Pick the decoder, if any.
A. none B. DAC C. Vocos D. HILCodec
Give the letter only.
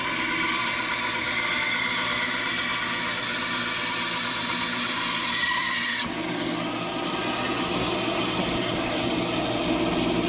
A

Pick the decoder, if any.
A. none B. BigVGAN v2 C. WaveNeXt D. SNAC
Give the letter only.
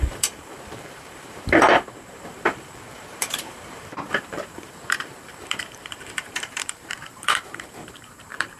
B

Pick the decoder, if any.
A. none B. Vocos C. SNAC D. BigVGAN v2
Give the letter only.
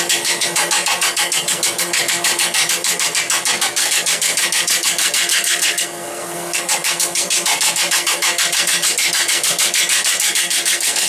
C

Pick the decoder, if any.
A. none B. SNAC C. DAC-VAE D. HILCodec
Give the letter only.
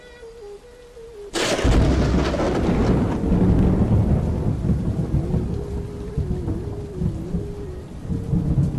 A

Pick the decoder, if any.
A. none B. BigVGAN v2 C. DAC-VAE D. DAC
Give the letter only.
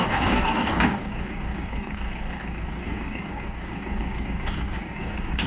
D